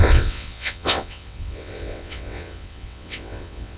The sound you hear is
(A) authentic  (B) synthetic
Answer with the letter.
B